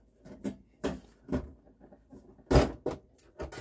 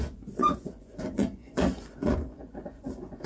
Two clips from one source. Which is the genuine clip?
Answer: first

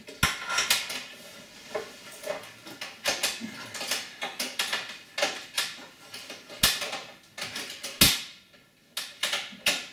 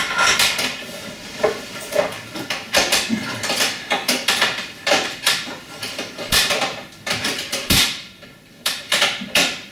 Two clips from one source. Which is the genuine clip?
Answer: first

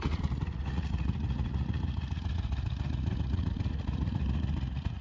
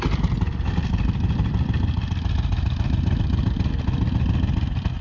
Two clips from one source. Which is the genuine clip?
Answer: second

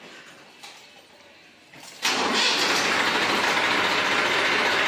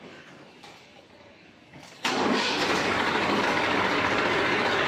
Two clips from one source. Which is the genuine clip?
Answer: first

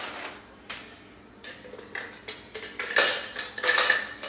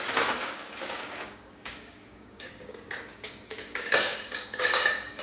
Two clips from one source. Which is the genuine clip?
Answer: first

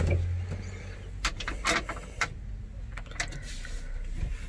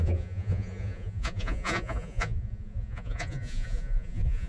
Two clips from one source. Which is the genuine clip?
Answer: first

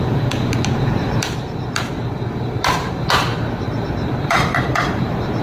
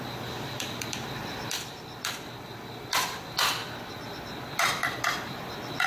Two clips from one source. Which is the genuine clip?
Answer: second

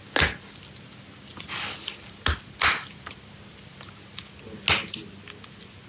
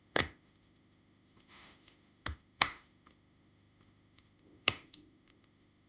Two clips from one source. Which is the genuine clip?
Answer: first